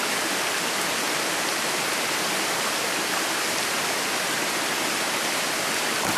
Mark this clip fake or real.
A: real